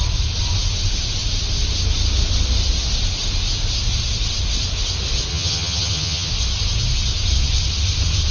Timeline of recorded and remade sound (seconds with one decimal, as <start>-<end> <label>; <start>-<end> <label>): 0.0-5.3 recorded; 5.3-6.3 remade; 6.3-8.3 recorded

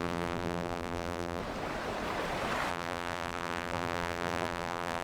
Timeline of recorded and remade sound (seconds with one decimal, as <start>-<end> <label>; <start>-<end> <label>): 0.0-1.4 remade; 1.4-2.7 recorded; 2.7-5.0 remade

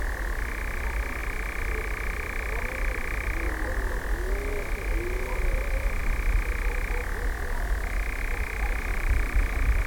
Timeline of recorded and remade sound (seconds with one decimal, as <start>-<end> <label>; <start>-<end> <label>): 0.0-8.9 recorded; 8.9-9.4 remade; 9.4-9.9 recorded